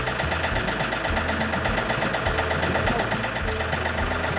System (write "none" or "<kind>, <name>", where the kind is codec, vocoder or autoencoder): none